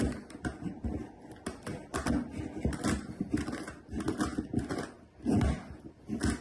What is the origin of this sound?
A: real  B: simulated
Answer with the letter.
A